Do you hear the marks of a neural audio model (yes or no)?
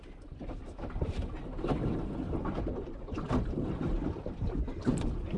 yes